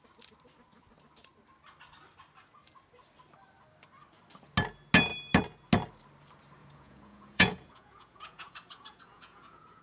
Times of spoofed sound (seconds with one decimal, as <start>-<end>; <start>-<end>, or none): 6.6-9.8